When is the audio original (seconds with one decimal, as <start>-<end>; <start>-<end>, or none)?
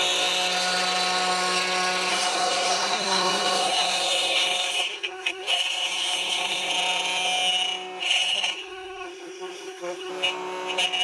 0.0-2.1; 6.7-8.0; 10.1-11.0